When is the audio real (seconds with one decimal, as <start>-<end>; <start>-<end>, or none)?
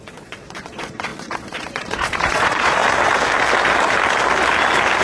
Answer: 2.8-5.0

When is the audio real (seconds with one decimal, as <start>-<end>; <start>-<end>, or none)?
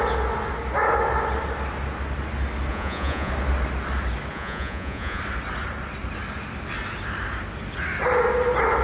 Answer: 0.0-2.7; 3.3-4.3; 5.2-8.8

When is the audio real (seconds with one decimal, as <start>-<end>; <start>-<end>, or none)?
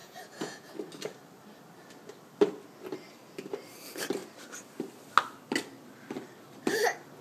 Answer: 0.7-7.2